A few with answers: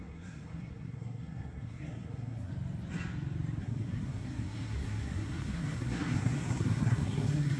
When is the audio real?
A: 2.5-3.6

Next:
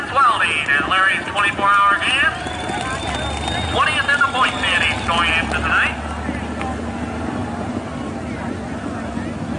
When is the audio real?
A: 0.0-9.6

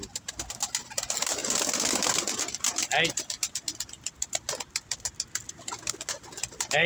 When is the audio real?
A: 0.0-6.9

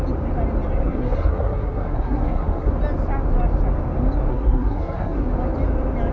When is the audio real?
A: 0.0-0.8; 2.7-4.3; 5.3-6.1

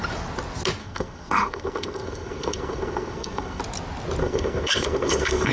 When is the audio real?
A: 0.0-0.8; 3.6-4.2

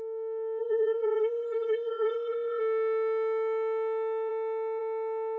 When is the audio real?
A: 0.0-0.6; 2.6-5.4